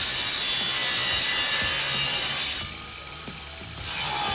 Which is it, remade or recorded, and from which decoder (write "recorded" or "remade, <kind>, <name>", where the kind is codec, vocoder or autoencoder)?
recorded